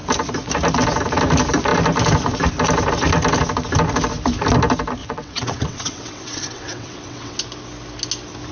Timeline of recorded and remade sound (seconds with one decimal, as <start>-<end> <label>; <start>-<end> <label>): 0.0-5.0 recorded; 5.0-7.4 remade; 7.4-8.5 recorded